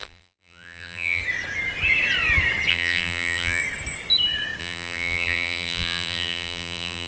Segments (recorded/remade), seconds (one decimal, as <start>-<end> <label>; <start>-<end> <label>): 0.0-1.2 remade; 1.2-2.7 recorded; 2.7-3.6 remade; 3.6-4.6 recorded; 4.6-7.1 remade